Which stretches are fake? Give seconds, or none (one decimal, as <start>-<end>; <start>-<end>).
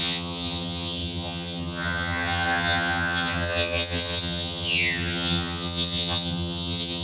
0.0-7.0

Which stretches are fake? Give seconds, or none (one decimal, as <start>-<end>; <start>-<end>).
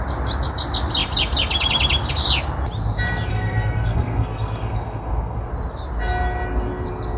3.3-5.5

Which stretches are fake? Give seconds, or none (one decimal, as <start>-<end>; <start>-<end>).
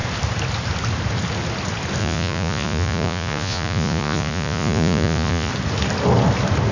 2.0-5.5